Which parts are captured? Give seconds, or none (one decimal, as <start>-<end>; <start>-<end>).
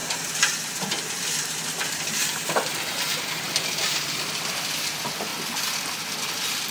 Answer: 5.3-6.3